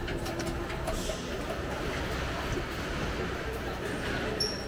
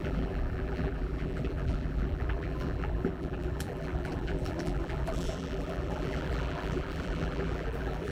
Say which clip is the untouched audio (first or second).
first